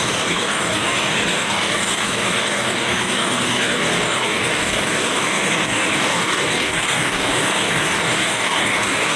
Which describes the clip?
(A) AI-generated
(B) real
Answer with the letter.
A